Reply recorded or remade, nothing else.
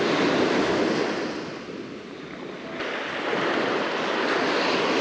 recorded